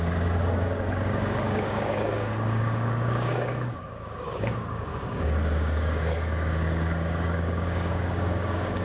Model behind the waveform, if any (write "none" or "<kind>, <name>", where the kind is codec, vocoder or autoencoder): codec, DAC